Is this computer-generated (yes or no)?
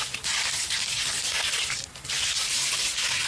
no